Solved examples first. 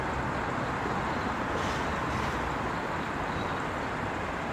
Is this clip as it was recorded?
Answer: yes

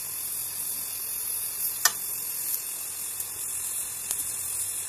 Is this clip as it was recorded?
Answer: yes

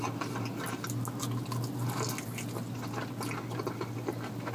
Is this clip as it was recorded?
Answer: yes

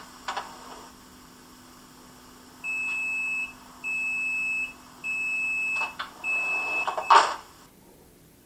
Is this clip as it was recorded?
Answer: yes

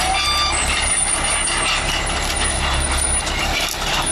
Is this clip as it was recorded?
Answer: yes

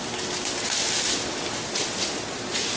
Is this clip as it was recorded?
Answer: yes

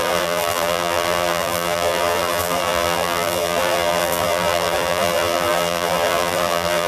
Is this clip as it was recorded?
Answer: no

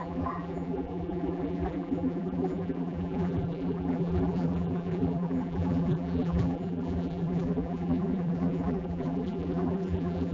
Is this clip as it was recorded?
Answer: no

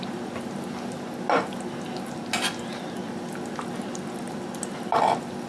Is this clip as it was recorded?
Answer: yes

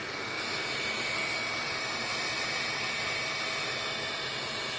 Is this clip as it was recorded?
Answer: yes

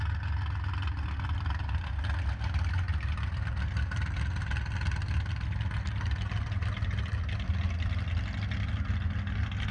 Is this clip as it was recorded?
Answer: yes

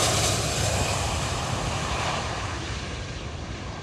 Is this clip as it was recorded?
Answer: no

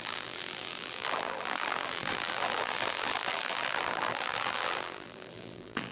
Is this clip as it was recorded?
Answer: no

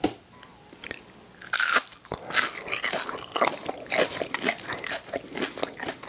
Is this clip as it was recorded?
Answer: yes